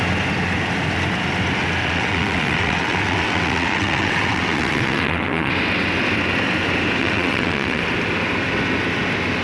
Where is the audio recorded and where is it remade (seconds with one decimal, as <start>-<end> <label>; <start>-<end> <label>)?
0.0-1.8 recorded; 1.8-5.5 remade; 5.5-7.0 recorded; 7.0-7.8 remade; 7.8-9.4 recorded